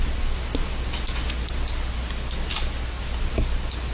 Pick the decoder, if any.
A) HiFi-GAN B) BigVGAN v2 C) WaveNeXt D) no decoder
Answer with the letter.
D